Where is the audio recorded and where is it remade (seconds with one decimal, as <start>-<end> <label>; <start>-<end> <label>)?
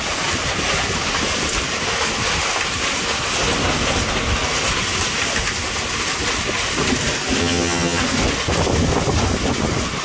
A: 0.0-7.4 recorded; 7.4-8.0 remade; 8.0-10.0 recorded